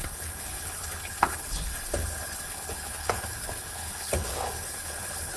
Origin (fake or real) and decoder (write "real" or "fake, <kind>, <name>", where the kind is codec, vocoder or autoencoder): fake, codec, HILCodec